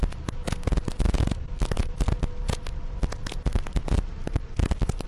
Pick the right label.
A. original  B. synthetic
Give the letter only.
A